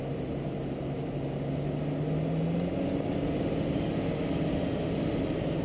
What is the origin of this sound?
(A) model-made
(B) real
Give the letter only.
B